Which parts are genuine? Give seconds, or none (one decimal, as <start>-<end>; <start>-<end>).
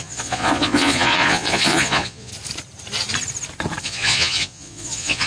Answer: 2.3-3.8